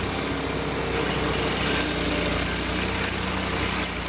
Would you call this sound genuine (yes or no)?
yes